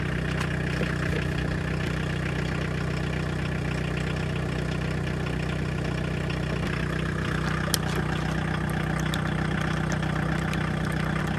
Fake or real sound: real